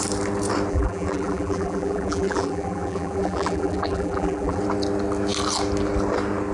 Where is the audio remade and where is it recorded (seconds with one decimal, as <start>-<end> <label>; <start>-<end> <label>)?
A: 0.0-0.7 recorded; 0.7-4.6 remade; 4.6-6.5 recorded